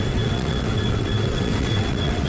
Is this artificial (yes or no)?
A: yes